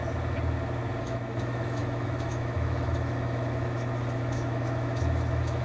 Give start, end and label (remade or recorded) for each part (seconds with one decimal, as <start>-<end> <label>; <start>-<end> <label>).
0.0-1.0 recorded; 1.0-5.6 remade